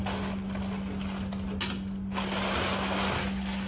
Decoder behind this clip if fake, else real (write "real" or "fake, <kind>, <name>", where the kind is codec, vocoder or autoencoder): real